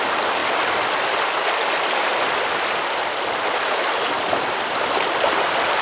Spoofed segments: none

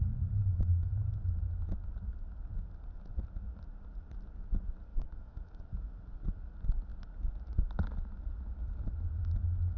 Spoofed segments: 0.4-0.9 (autoencoder, DAC-VAE); 4.9-5.6

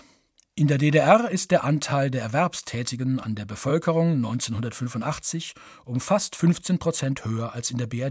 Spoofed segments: 1.9-3.0 (autoencoder, DAC-VAE); 3.7-6.4

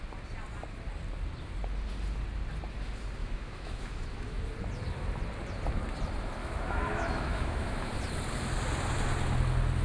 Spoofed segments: 3.2-4.4 (autoencoder, DAC-VAE); 6.4-8.0

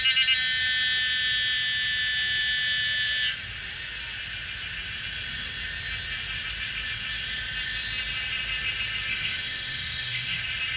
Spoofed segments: 9.1-10.4 (autoencoder, DAC-VAE)

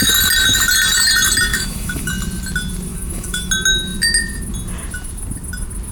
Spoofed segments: 1.5-2.1 (autoencoder, DAC-VAE); 2.9-3.5

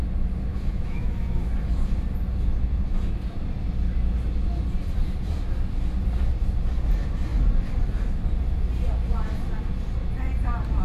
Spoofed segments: 0.5-1.5 (autoencoder, DAC-VAE)